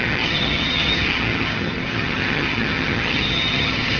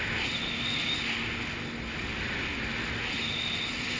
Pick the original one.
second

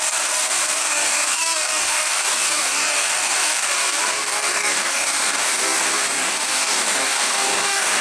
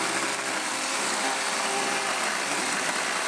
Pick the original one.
second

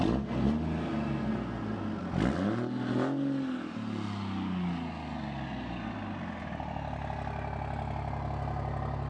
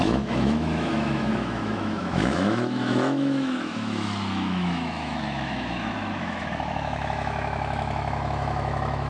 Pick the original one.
first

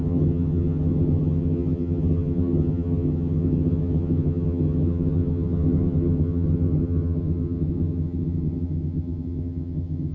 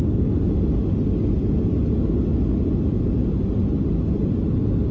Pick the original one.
second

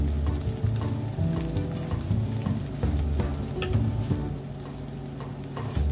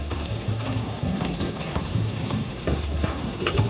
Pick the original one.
first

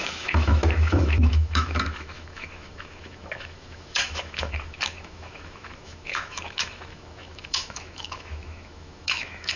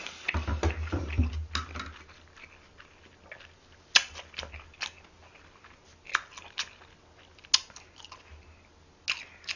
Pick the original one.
second